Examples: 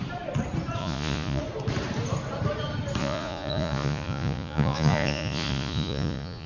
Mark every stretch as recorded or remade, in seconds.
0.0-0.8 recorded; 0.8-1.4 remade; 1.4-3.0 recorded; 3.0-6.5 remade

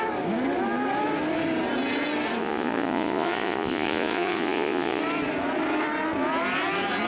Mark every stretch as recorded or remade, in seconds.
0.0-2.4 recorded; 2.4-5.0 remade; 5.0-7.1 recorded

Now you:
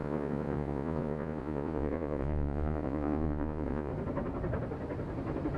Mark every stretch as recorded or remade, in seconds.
0.0-3.9 remade; 3.9-5.6 recorded

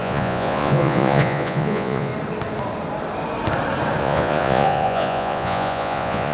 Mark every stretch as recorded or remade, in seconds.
0.0-2.1 remade; 2.1-4.0 recorded; 4.0-6.3 remade